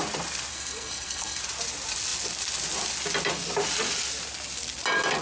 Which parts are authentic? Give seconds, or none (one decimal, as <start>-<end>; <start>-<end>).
0.0-0.5; 1.4-5.2